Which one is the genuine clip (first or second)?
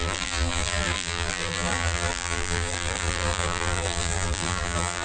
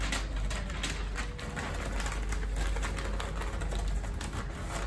second